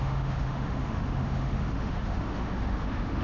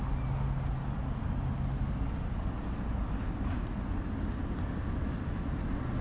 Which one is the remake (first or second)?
first